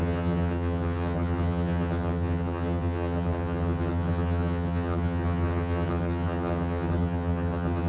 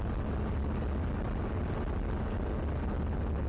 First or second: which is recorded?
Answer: second